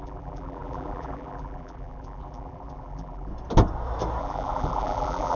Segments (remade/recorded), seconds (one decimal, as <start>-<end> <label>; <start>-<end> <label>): 0.0-3.3 remade; 3.3-4.2 recorded; 4.2-5.4 remade